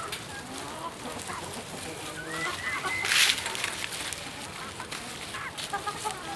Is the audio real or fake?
real